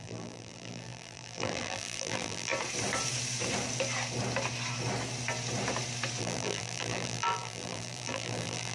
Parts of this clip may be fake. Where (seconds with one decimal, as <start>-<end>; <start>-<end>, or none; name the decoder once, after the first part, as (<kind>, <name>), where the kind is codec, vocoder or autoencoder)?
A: 0.0-2.5 (vocoder, BigVGAN v2); 6.2-8.7